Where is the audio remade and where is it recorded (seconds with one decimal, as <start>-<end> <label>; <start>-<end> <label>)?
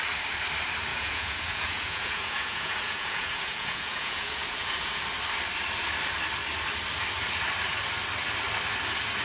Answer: 0.0-0.9 recorded; 0.9-5.0 remade; 5.0-9.2 recorded